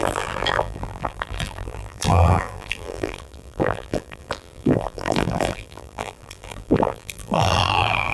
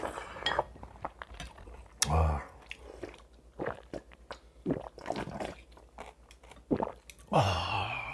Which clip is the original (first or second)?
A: second